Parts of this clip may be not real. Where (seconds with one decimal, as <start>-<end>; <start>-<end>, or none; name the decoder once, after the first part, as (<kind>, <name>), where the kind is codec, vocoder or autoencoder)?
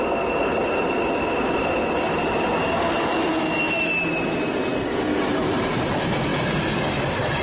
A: 0.5-3.4 (vocoder, BigVGAN v2); 6.3-7.4